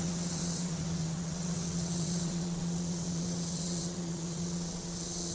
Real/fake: fake